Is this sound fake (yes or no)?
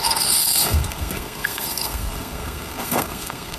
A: yes